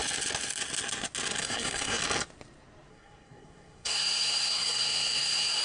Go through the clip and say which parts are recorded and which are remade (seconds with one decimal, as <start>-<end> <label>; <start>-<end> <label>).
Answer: 0.0-1.4 recorded; 1.4-2.0 remade; 2.0-2.9 recorded; 2.9-5.6 remade